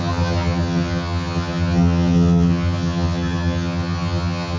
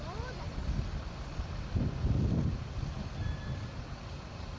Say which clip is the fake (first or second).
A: first